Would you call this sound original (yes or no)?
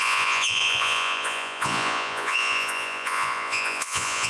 no